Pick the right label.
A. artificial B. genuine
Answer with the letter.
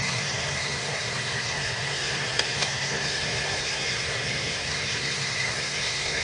A